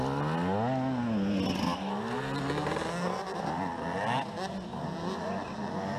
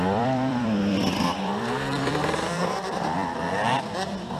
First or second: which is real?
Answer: first